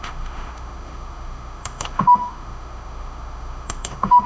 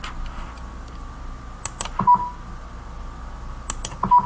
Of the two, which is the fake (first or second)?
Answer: first